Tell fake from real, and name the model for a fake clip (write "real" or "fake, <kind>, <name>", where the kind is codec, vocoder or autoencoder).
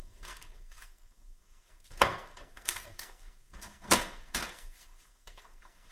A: fake, codec, SNAC